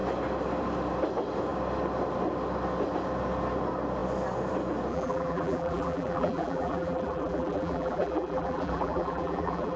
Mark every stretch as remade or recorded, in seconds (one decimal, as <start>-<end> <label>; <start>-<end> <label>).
0.0-4.9 recorded; 4.9-9.8 remade